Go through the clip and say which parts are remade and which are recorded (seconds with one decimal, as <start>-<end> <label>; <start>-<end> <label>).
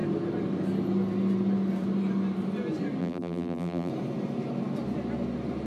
0.0-3.0 recorded; 3.0-3.9 remade; 3.9-5.7 recorded